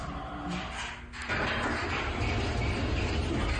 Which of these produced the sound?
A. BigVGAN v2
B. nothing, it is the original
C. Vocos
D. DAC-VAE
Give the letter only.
B